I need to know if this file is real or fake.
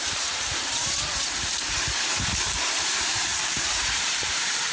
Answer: fake